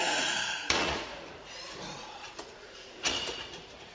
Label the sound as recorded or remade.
remade